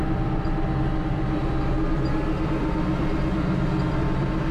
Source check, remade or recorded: remade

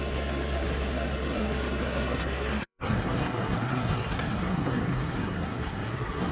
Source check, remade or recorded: remade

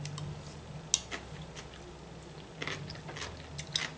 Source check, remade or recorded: recorded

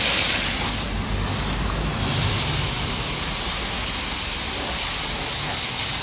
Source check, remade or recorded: recorded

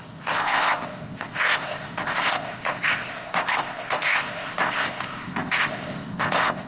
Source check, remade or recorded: remade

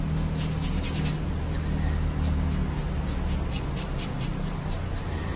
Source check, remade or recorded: recorded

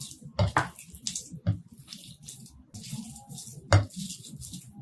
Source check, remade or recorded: recorded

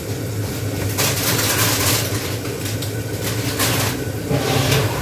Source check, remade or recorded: recorded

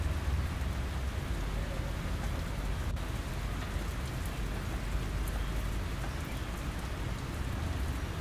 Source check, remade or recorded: recorded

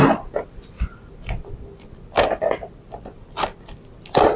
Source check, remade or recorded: recorded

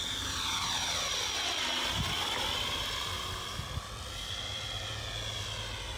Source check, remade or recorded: recorded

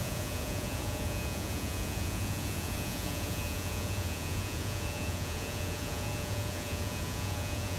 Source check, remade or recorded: remade